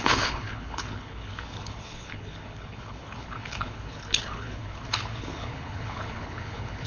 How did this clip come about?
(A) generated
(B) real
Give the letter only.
A